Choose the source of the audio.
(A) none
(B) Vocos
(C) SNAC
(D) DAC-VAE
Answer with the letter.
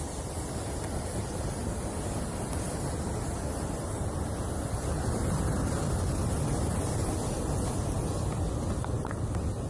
A